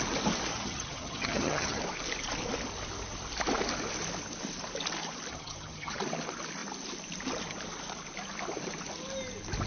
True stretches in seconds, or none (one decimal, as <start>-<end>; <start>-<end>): 0.0-0.5; 1.8-5.3; 6.0-9.7